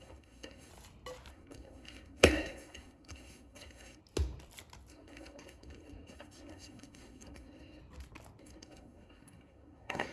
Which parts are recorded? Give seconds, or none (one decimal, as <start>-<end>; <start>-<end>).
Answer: 0.7-1.3; 4.0-4.9; 7.8-8.4